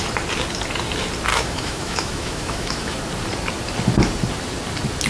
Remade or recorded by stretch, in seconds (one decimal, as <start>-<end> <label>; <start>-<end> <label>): 0.0-1.3 recorded; 1.3-2.9 remade; 2.9-5.1 recorded